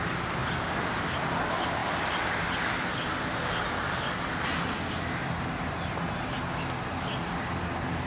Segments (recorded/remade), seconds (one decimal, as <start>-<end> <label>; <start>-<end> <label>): 0.0-8.1 recorded